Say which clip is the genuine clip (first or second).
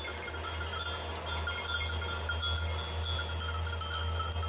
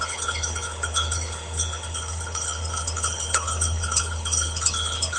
first